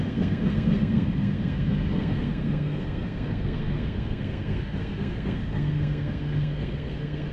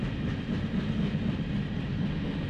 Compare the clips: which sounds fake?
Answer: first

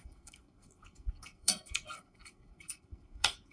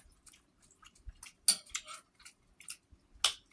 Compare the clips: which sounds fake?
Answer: first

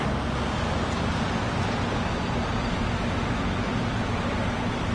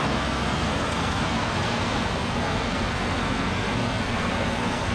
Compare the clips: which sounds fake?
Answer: second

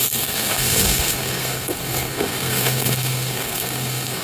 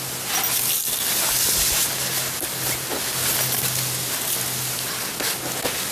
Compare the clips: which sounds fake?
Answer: first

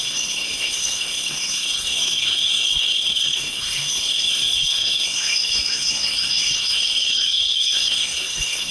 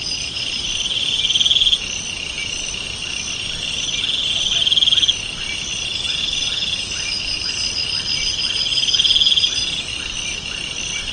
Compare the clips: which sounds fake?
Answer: first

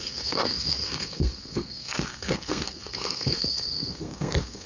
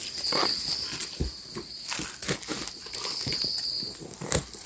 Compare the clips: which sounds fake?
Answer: first